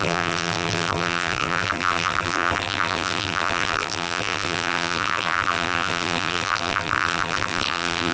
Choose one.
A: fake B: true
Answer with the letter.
A